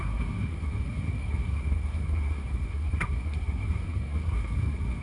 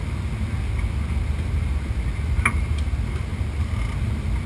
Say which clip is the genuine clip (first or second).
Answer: second